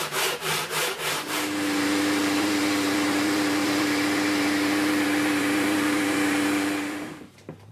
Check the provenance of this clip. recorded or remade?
remade